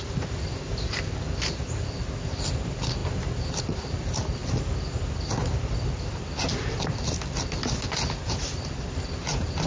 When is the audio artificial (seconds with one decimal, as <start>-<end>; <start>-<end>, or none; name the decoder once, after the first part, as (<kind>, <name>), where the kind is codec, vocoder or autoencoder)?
none